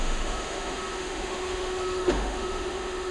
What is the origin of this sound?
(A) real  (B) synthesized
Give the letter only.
B